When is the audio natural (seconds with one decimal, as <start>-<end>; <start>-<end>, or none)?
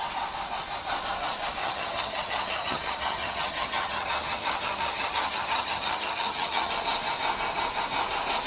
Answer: 0.0-1.6; 6.7-8.5